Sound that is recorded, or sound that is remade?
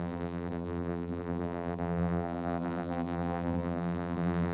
remade